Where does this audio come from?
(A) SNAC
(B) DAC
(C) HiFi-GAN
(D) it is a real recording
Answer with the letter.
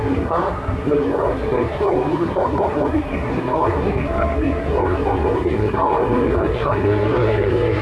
A